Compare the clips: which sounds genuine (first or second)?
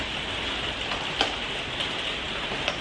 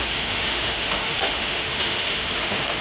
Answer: first